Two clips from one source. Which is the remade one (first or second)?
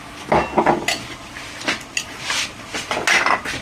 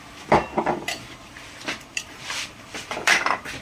second